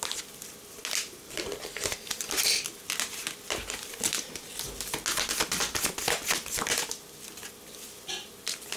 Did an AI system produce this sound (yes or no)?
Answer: no